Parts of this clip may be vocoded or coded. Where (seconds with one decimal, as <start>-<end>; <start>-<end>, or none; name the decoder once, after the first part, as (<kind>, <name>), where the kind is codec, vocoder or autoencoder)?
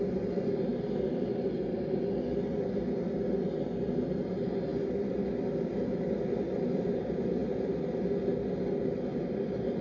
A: none